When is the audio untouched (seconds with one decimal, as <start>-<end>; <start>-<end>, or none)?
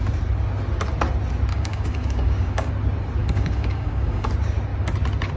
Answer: 0.0-1.5; 2.7-3.2; 4.3-5.4